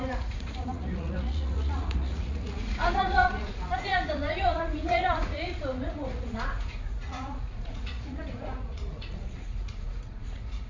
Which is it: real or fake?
fake